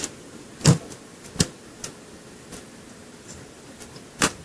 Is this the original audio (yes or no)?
yes